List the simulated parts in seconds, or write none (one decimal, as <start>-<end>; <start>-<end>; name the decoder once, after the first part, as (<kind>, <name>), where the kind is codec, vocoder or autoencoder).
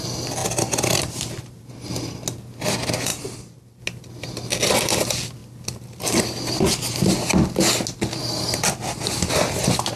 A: 0.4-1.6 (vocoder, BigVGAN v2); 3.1-3.8